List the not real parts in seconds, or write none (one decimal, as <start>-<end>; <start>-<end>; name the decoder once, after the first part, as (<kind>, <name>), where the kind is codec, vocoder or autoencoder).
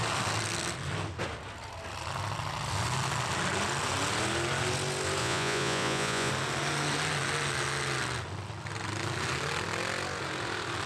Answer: 5.2-6.3 (vocoder, Vocos)